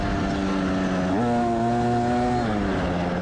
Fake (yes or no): no